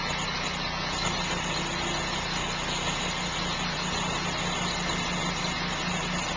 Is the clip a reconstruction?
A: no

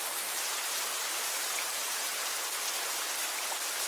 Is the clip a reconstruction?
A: yes